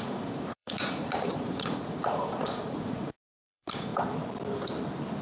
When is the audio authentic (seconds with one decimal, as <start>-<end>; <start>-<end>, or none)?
3.9-5.2